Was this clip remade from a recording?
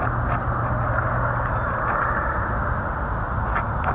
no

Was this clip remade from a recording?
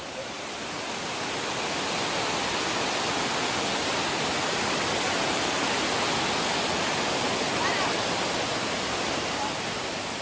no